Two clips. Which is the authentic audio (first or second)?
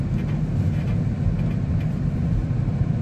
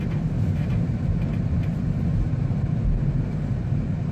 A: first